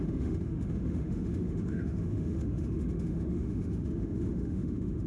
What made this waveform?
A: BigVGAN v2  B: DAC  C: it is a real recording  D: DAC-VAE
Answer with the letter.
D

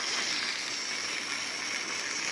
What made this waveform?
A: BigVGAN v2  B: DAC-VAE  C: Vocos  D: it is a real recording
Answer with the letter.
D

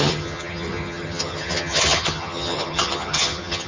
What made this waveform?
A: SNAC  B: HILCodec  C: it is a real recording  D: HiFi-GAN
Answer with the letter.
D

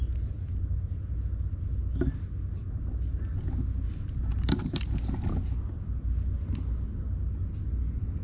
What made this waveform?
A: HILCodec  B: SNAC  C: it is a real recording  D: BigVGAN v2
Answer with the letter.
C